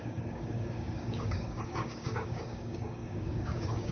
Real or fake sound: fake